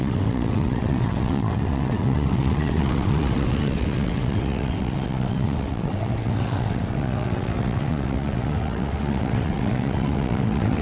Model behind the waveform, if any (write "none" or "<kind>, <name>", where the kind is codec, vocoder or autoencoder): vocoder, WaveNeXt